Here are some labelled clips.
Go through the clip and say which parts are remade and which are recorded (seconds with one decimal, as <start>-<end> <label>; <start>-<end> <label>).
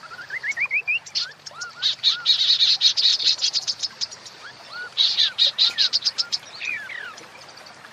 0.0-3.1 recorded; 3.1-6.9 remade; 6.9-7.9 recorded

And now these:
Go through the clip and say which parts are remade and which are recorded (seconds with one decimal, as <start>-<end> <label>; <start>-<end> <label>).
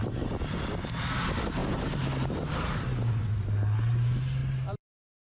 0.0-1.6 recorded; 1.6-3.1 remade; 3.1-4.4 recorded; 4.4-5.2 remade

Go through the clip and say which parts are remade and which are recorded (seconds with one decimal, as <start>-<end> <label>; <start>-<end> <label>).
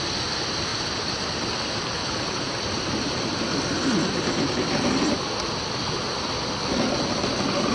0.0-0.7 recorded; 0.7-3.4 remade; 3.4-7.7 recorded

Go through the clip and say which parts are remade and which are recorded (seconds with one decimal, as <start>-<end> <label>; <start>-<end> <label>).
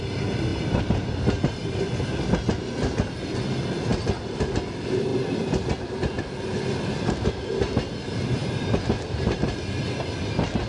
0.0-0.5 recorded; 0.5-1.8 remade; 1.8-10.7 recorded